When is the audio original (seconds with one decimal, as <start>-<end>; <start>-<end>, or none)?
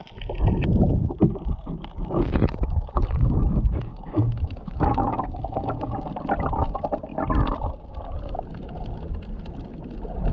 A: 0.0-0.9; 6.0-10.3